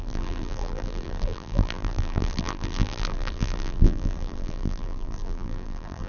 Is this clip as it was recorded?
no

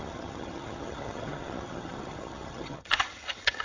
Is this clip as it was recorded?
no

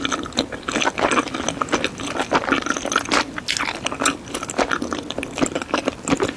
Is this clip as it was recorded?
yes